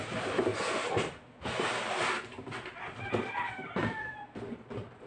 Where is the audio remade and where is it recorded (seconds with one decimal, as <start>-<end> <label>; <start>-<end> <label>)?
0.0-5.1 remade